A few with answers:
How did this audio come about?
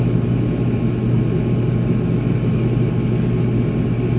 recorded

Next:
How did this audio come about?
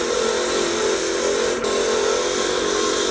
recorded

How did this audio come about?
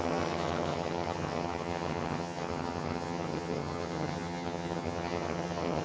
remade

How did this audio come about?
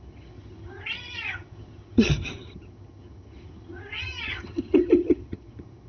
remade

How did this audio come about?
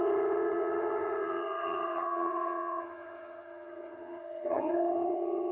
remade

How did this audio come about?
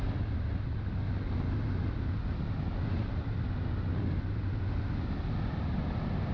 recorded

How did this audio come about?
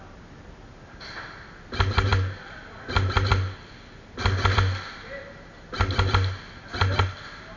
recorded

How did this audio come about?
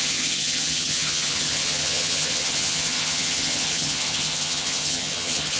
remade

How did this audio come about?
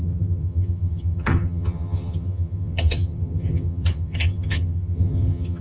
remade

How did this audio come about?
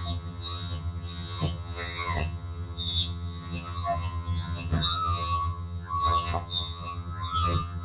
remade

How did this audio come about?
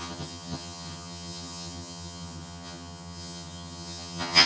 remade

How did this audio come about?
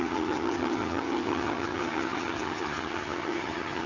remade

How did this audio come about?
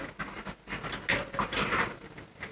recorded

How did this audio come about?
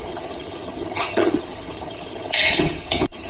remade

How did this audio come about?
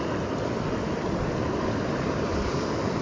recorded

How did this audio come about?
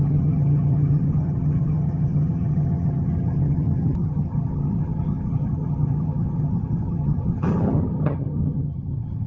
remade